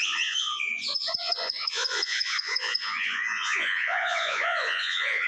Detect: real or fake fake